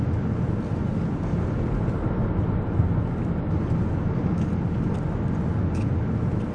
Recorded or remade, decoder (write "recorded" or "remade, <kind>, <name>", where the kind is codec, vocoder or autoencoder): recorded